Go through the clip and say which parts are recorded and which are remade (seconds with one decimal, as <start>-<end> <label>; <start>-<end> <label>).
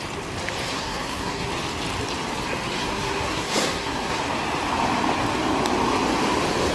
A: 0.0-0.7 recorded; 0.7-1.5 remade; 1.5-2.8 recorded; 2.8-4.2 remade; 4.2-6.7 recorded